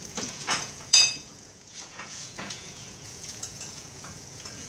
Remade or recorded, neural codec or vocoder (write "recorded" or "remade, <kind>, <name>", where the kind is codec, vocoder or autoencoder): remade, vocoder, Vocos